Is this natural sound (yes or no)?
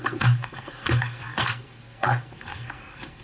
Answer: no